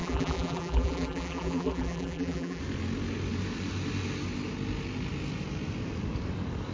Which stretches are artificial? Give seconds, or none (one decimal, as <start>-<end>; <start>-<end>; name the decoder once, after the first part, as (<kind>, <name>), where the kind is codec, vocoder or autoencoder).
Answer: 0.0-2.6 (vocoder, BigVGAN v2)